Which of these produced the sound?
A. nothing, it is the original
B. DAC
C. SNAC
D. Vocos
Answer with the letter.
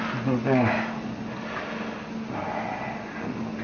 A